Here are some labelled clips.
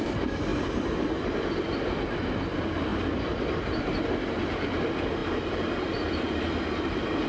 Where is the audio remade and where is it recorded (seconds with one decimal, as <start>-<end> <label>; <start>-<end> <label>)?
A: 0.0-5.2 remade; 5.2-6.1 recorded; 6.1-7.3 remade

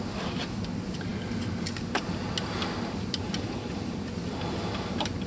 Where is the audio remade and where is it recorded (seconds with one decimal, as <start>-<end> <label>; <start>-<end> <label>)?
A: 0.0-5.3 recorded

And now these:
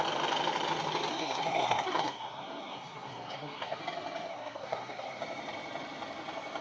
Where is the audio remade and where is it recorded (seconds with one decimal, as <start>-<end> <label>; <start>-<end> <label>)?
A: 0.0-1.1 recorded; 1.1-3.8 remade; 3.8-4.3 recorded; 4.3-5.2 remade; 5.2-6.6 recorded